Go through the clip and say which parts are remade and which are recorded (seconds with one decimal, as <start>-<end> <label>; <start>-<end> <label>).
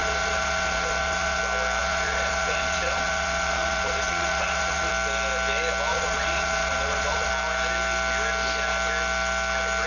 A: 0.0-1.4 remade; 1.4-1.8 recorded; 1.8-4.9 remade; 4.9-5.9 recorded; 5.9-7.3 remade; 7.3-9.9 recorded